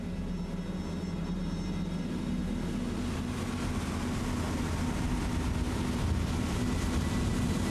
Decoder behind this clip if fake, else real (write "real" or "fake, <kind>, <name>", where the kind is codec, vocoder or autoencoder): real